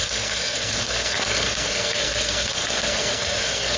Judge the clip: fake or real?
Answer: fake